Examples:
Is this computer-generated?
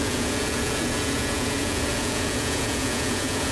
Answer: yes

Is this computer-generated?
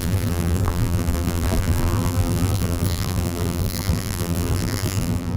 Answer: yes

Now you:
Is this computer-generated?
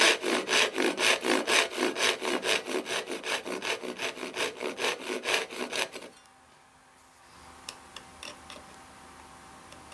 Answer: no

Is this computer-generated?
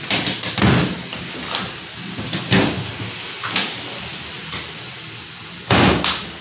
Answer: no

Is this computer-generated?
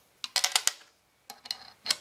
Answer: no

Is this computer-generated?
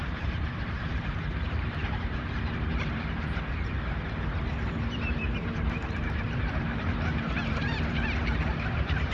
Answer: yes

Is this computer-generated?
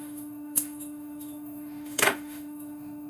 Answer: yes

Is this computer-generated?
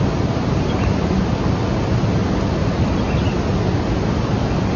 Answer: no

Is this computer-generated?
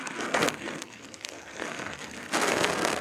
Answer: yes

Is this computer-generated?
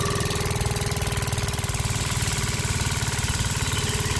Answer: no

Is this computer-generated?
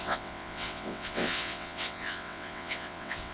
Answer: yes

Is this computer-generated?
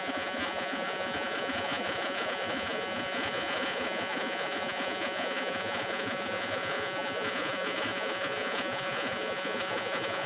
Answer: yes